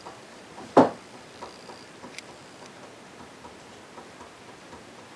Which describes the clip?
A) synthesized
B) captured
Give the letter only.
A